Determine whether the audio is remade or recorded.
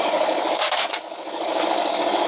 remade